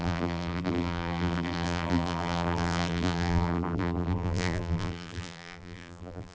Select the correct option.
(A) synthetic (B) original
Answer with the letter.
A